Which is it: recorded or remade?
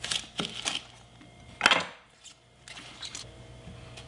recorded